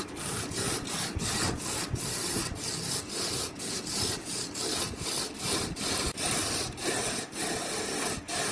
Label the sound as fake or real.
real